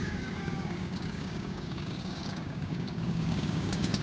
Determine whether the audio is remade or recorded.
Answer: remade